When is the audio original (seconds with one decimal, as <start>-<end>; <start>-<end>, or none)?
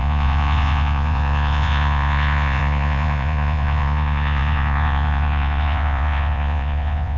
none